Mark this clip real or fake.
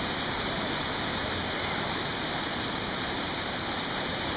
fake